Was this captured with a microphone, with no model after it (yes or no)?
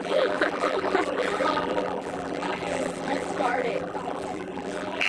no